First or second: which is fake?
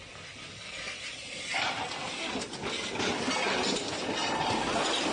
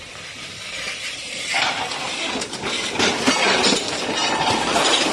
second